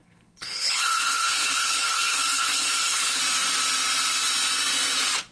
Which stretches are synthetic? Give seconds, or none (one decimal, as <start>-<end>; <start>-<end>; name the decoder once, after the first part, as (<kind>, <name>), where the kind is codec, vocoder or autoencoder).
0.0-3.2 (codec, HILCodec)